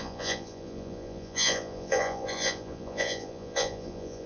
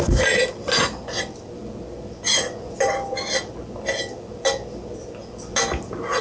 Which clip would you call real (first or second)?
second